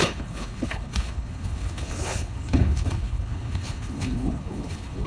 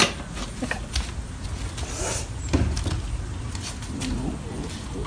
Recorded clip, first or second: second